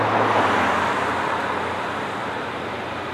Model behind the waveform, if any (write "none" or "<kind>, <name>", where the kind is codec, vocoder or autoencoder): none